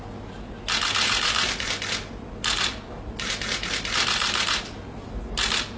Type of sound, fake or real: real